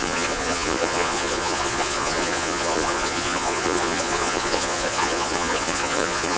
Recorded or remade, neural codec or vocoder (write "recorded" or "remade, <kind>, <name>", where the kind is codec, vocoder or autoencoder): remade, vocoder, Vocos